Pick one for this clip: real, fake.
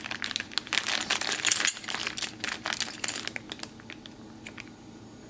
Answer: real